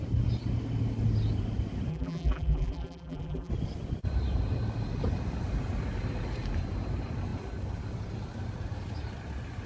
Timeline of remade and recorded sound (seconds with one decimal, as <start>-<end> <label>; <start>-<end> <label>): 0.0-1.9 recorded; 1.9-3.5 remade; 3.5-9.7 recorded